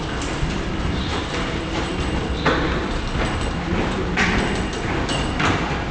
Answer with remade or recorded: recorded